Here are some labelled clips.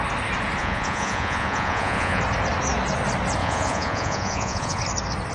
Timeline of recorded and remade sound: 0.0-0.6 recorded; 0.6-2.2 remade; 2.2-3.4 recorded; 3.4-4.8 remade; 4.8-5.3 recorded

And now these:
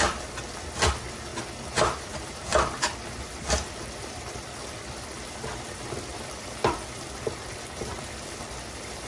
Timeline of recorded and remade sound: 0.0-9.1 remade

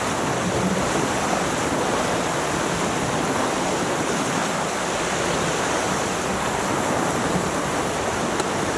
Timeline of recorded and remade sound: 0.0-8.8 recorded

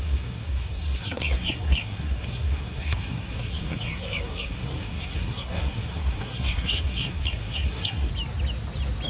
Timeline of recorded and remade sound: 0.0-8.1 remade; 8.1-9.1 recorded

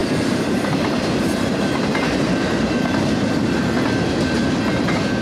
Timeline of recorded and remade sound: 0.0-1.8 remade; 1.8-5.2 recorded

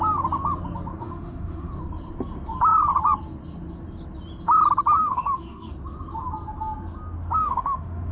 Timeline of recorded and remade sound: 0.0-1.0 recorded; 1.0-1.7 remade; 1.7-5.0 recorded; 5.0-5.7 remade; 5.7-7.4 recorded; 7.4-8.1 remade